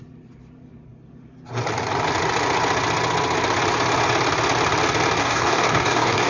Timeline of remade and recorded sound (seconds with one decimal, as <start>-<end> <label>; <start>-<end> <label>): 0.0-5.2 recorded; 5.2-6.3 remade